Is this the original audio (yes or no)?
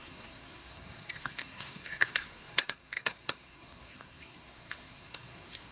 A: no